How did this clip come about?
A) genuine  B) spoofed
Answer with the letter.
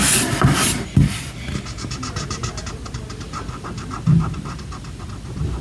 A